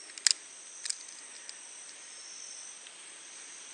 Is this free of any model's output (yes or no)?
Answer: yes